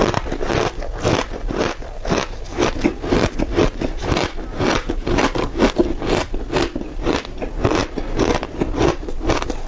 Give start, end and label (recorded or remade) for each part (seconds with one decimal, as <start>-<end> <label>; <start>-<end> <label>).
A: 0.0-9.7 recorded

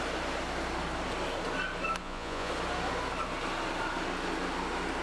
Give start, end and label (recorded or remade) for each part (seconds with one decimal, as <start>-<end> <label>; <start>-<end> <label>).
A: 0.0-2.0 recorded; 2.0-2.5 remade; 2.5-5.0 recorded